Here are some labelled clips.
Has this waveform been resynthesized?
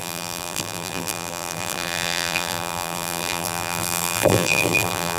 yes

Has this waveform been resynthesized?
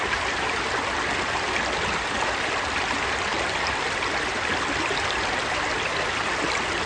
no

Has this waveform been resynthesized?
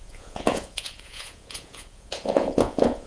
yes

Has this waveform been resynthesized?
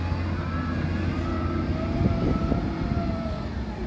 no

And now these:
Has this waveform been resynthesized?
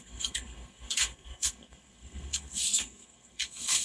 yes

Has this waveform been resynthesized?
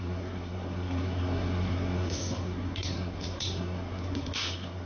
yes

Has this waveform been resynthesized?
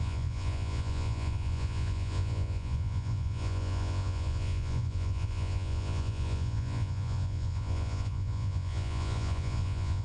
yes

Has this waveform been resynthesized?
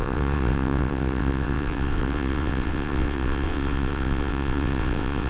yes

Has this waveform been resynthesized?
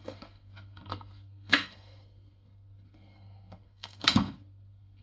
yes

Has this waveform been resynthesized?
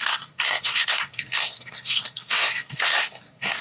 yes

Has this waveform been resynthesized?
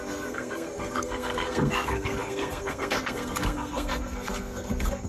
yes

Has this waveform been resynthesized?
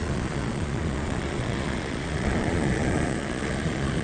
yes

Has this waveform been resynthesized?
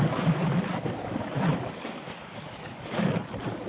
yes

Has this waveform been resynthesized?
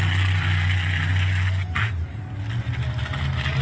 no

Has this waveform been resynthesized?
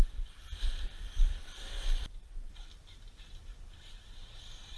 no